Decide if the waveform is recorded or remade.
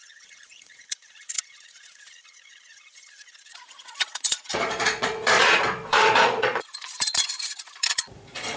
remade